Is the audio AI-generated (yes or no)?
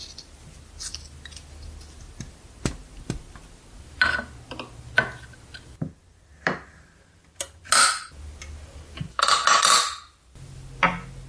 no